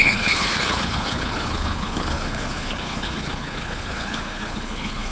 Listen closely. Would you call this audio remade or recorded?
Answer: remade